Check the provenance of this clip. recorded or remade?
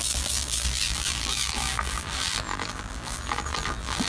remade